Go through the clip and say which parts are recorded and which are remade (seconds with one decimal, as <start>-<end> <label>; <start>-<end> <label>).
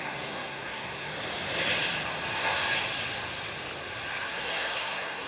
0.0-1.1 remade; 1.1-4.3 recorded; 4.3-5.3 remade